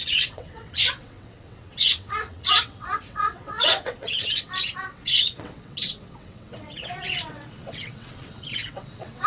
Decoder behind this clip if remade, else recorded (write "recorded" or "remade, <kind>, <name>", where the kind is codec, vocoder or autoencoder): remade, vocoder, WaveNeXt